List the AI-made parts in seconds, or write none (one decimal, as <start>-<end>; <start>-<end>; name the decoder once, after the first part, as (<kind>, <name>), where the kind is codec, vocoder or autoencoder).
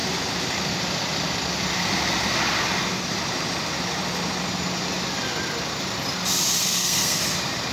6.6-7.2 (codec, SNAC)